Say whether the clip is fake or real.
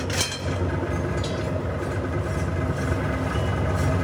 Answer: real